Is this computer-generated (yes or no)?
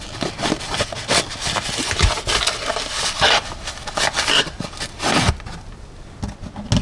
no